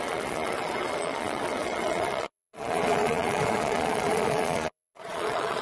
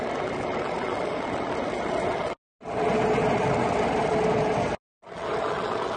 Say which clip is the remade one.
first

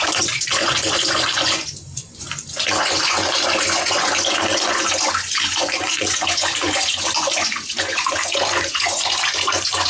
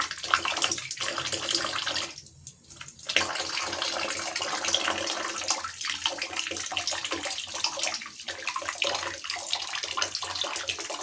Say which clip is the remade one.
first